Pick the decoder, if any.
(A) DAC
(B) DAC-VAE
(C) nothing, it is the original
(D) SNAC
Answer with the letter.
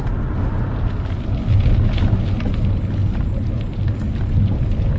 C